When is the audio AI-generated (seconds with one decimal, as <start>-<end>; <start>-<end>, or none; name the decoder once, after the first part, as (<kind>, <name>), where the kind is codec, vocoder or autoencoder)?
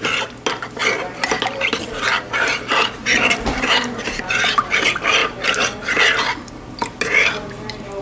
3.0-4.2 (vocoder, BigVGAN v2)